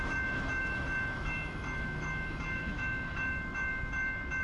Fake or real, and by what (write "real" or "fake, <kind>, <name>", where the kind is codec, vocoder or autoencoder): fake, autoencoder, DAC-VAE